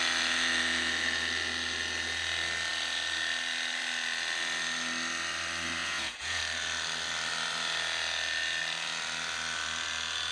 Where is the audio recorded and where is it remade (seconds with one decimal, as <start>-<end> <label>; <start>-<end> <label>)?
0.0-5.8 recorded; 5.8-6.4 remade; 6.4-10.3 recorded